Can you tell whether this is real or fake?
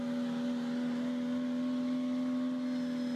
real